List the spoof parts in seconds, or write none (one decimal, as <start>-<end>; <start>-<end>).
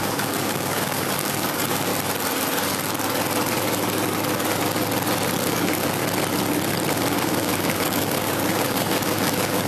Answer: 0.0-1.9; 5.4-6.0; 6.9-9.7